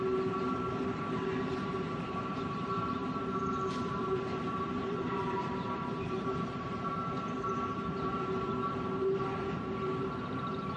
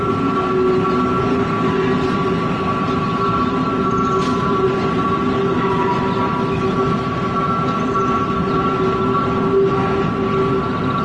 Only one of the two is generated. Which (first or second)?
first